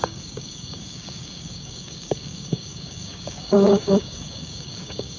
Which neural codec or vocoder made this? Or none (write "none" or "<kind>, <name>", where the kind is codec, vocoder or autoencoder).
codec, DAC